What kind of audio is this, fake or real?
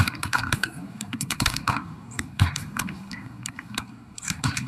fake